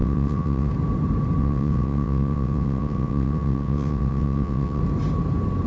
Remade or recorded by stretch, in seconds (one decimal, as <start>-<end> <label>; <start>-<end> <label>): 0.0-0.7 remade; 0.7-1.4 recorded; 1.4-4.8 remade; 4.8-5.7 recorded